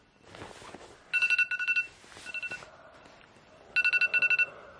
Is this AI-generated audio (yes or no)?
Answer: no